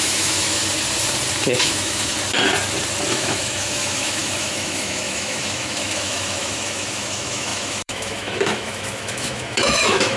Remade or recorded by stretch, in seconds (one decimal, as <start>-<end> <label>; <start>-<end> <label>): 0.0-0.6 remade; 0.6-1.3 recorded; 1.3-2.1 remade; 2.1-3.1 recorded; 3.1-10.2 remade